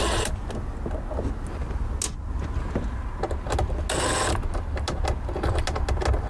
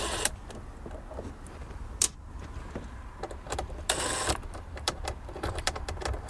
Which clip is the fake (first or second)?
second